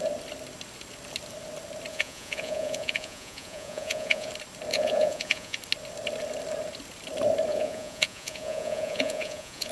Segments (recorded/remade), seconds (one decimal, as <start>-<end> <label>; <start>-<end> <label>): 0.0-1.9 recorded; 1.9-4.3 remade; 4.3-4.7 recorded; 4.7-5.6 remade; 5.6-7.5 recorded; 7.5-9.7 remade

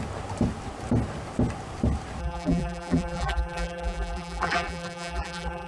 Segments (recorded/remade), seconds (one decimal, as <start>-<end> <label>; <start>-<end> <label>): 0.0-2.2 recorded; 2.2-5.7 remade

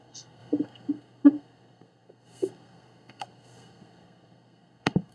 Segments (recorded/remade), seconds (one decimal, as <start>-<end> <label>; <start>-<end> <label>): 0.0-5.1 remade

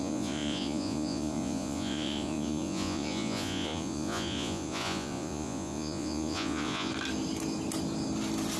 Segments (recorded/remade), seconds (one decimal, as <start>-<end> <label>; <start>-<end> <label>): 0.0-6.9 remade; 6.9-8.6 recorded

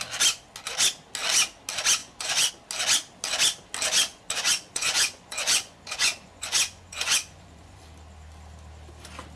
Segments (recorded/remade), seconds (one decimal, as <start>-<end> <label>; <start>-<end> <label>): 0.0-2.0 recorded; 2.0-2.5 remade; 2.5-4.1 recorded; 4.1-7.8 remade; 7.8-9.4 recorded

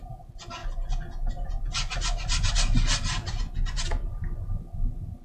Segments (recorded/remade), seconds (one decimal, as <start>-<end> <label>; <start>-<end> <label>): 0.0-5.2 recorded

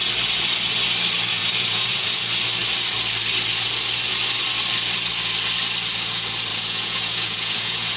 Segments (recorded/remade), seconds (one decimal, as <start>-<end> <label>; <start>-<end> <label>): 0.0-1.3 recorded; 1.3-2.1 remade; 2.1-6.5 recorded; 6.5-8.0 remade

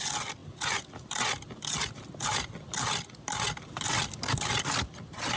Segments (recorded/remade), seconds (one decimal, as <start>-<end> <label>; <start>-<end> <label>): 0.0-5.4 recorded